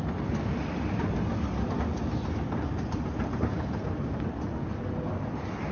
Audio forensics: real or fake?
real